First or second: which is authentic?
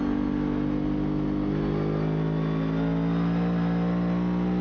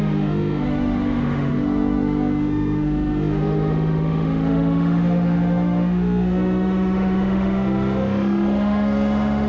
first